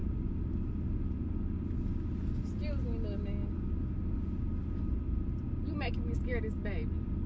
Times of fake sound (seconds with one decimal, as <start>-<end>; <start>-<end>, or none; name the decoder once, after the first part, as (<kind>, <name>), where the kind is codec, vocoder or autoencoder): none